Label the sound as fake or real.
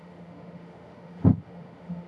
fake